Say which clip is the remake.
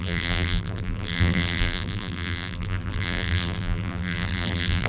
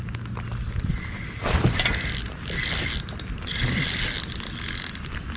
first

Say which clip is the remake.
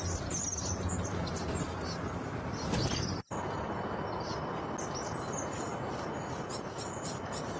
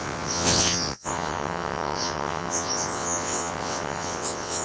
second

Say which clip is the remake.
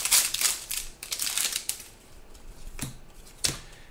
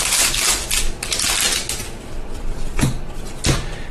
first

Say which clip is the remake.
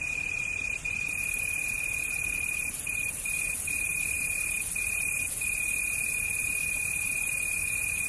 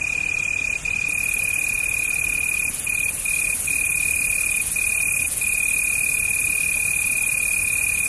first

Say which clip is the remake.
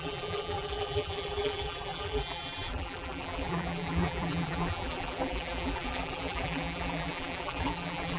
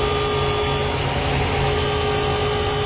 first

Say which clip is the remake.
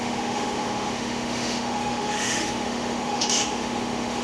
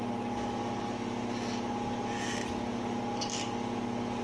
first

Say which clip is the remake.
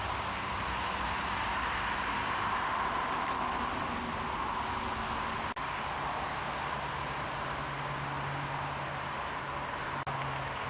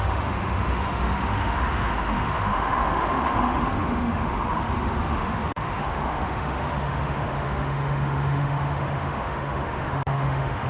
second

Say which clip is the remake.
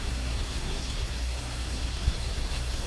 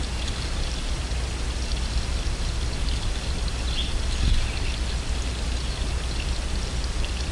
first